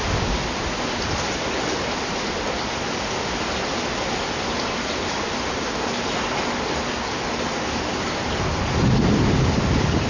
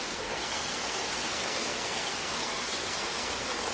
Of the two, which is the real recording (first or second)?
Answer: first